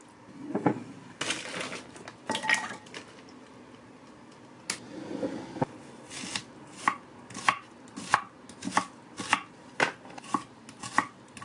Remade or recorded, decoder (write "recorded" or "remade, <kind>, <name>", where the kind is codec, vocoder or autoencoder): recorded